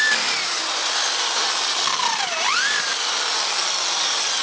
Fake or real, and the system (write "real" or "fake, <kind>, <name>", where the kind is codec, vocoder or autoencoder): real